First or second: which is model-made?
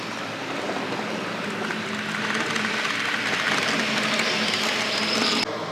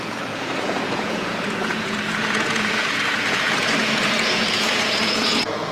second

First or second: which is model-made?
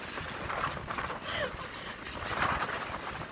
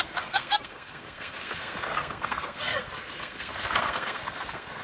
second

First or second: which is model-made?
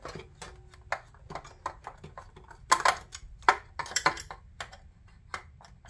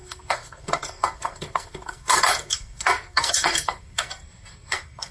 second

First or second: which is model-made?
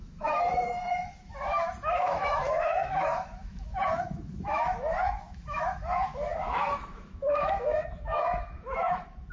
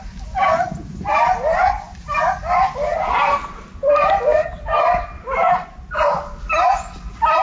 first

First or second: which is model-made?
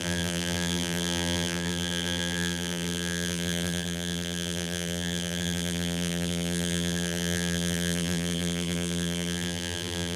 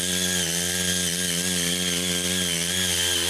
first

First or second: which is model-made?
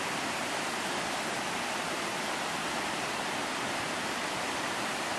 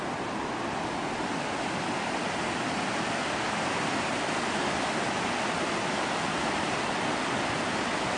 first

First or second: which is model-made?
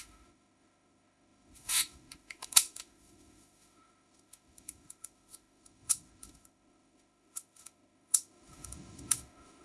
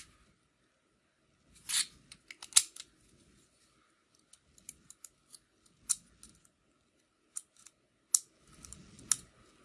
first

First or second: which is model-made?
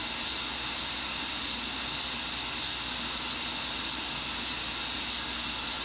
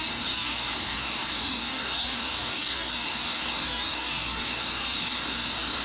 second